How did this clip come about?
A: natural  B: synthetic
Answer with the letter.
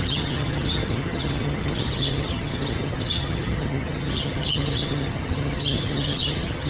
B